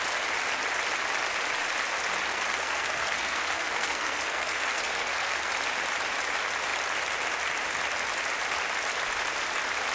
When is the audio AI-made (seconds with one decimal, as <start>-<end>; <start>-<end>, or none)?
2.3-5.5